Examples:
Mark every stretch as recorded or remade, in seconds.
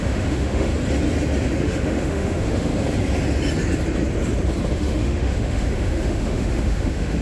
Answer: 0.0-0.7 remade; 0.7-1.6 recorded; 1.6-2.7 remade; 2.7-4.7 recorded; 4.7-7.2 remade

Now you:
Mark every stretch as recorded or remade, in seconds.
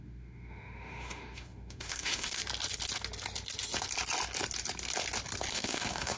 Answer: 0.0-2.4 remade; 2.4-5.5 recorded; 5.5-6.2 remade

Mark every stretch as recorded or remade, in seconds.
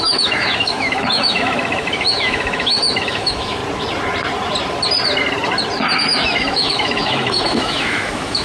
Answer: 0.0-3.6 remade; 3.6-6.0 recorded; 6.0-8.4 remade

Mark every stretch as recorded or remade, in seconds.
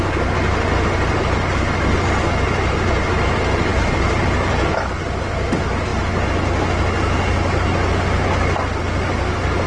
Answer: 0.0-9.7 recorded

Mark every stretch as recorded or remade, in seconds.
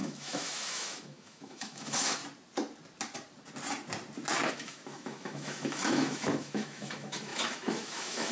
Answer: 0.0-2.2 remade; 2.2-4.5 recorded; 4.5-8.3 remade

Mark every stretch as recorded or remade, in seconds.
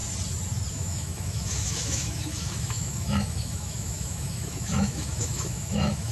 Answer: 0.0-0.7 recorded; 0.7-6.1 remade